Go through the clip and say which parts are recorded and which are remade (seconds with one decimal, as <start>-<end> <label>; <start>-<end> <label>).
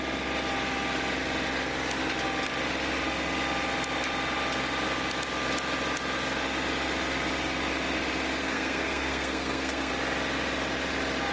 0.0-8.4 recorded; 8.4-9.9 remade; 9.9-11.3 recorded